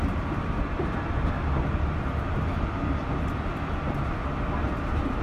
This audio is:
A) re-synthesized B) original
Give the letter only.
A